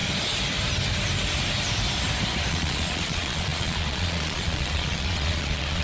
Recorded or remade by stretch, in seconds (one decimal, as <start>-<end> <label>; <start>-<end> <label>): 0.0-2.5 recorded; 2.5-5.8 remade